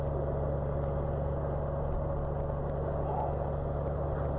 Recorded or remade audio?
recorded